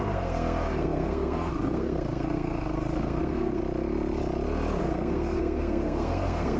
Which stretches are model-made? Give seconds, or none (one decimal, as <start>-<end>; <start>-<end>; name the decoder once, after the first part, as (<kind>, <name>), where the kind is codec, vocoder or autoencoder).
0.0-3.6 (codec, SNAC); 4.8-6.6

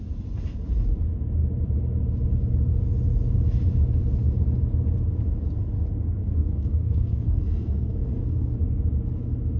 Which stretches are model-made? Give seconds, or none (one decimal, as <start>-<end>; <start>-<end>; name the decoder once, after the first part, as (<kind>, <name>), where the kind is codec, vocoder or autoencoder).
6.2-8.5 (codec, SNAC)

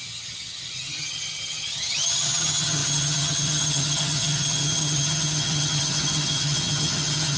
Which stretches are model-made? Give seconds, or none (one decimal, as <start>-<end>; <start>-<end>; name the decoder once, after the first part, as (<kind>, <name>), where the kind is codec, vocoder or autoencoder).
0.0-7.4 (vocoder, HiFi-GAN)

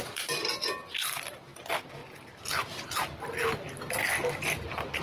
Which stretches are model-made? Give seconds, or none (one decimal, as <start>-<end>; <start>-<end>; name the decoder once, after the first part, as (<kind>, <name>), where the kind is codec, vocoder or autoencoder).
none